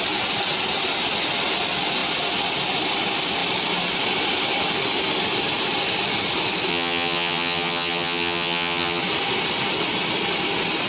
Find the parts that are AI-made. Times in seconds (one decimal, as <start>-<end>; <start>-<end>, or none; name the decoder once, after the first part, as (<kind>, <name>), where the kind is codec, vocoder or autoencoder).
6.7-9.0 (vocoder, HiFi-GAN)